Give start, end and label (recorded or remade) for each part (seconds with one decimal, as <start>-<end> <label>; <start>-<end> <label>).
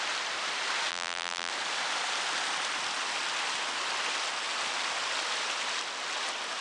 0.0-0.9 recorded; 0.9-1.5 remade; 1.5-6.6 recorded